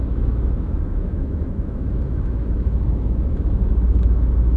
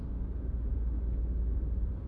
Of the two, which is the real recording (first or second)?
second